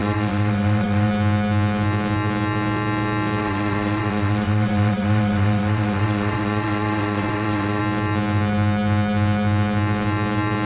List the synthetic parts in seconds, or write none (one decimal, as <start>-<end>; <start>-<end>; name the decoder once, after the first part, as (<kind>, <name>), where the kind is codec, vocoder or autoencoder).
0.0-1.1 (vocoder, WaveNeXt); 3.4-7.8